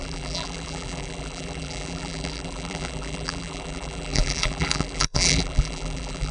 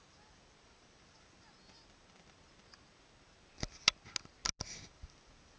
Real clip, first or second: second